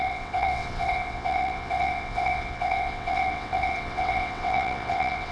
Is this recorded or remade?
remade